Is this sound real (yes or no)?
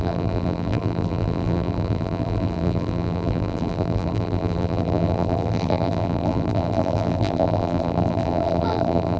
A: no